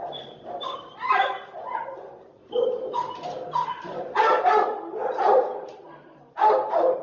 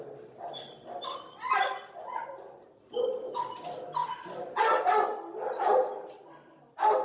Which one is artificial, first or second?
first